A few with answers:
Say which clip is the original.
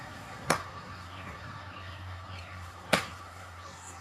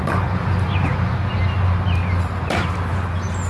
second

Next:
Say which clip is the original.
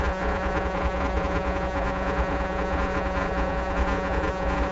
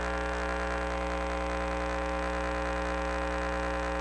second